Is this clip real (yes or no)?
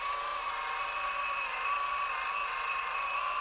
yes